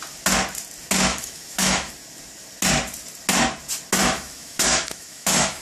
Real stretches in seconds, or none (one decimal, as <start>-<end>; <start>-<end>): 0.0-1.1; 1.9-4.0